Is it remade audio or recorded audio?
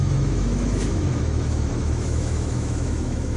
remade